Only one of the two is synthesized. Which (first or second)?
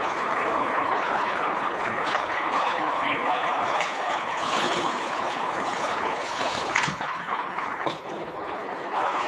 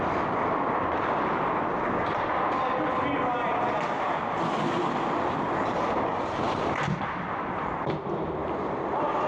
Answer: first